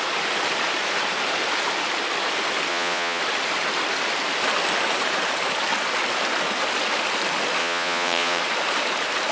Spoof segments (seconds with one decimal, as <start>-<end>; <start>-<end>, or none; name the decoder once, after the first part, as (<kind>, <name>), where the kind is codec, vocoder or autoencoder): 2.7-3.2 (vocoder, Vocos); 7.6-8.4